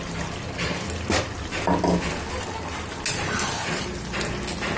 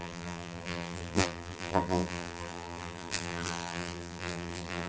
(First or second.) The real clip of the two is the first